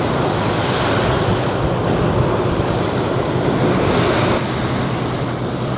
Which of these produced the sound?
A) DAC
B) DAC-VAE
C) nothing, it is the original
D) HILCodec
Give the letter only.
C